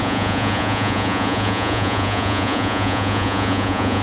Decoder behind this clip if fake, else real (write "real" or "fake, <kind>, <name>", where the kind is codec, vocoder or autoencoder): fake, vocoder, Vocos